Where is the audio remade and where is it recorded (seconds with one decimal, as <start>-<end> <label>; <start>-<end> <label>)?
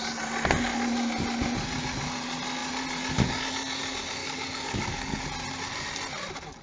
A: 0.0-4.2 recorded; 4.2-5.2 remade; 5.2-6.6 recorded